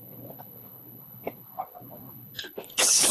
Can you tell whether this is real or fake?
fake